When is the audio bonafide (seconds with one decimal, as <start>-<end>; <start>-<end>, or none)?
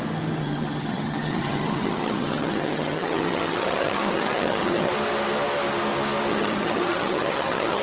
0.0-0.4; 4.9-6.3